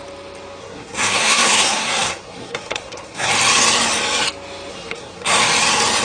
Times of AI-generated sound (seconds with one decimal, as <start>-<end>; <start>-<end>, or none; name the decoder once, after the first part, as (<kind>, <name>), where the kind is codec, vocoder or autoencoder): 0.6-3.3 (codec, SNAC); 4.7-5.4